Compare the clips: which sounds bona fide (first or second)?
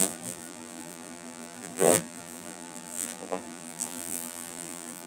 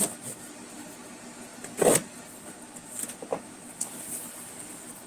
second